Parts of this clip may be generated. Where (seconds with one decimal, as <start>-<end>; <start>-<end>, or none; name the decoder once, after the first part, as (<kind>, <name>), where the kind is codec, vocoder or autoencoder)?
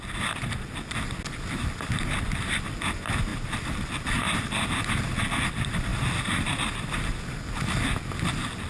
none